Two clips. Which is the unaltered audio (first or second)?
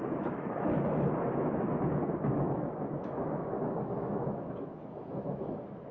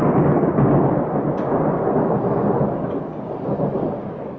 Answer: second